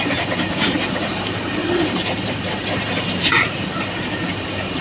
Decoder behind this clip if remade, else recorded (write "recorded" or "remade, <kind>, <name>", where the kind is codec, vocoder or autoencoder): remade, vocoder, BigVGAN v2